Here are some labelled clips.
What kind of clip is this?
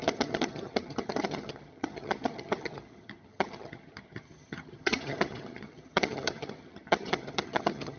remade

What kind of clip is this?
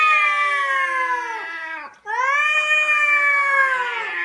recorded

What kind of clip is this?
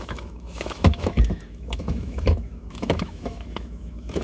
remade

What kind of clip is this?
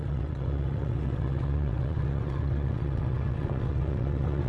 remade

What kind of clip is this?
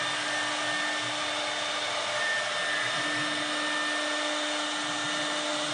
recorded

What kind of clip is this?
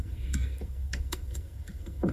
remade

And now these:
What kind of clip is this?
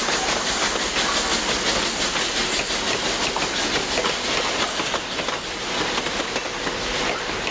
recorded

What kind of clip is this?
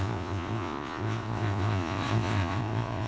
remade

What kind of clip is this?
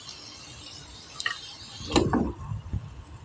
recorded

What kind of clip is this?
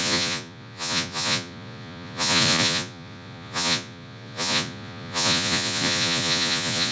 remade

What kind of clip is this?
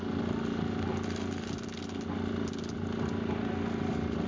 recorded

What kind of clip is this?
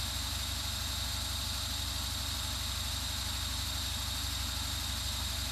recorded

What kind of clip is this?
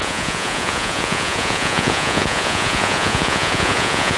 remade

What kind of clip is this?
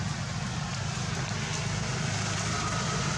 recorded